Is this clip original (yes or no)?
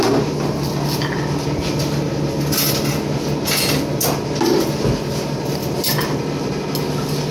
yes